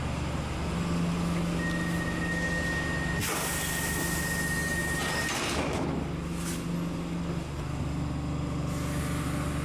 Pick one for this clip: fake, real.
real